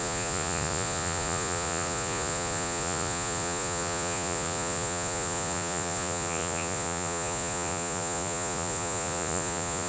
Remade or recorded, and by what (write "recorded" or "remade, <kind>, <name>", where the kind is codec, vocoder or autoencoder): remade, vocoder, Vocos